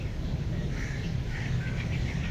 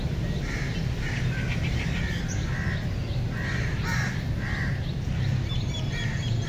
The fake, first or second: first